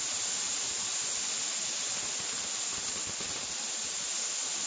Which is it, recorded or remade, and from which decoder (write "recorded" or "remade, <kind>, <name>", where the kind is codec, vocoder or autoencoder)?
recorded